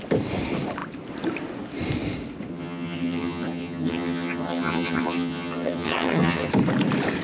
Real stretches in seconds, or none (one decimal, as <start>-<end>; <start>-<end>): 0.0-2.5; 6.5-7.2